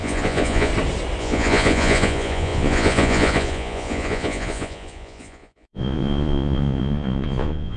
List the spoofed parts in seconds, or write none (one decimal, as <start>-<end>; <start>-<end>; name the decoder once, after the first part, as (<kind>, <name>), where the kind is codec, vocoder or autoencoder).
0.0-0.7 (vocoder, Vocos); 1.2-7.8